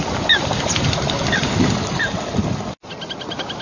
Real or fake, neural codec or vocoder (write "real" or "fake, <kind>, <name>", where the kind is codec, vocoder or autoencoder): real